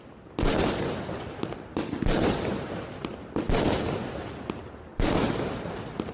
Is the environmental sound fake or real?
real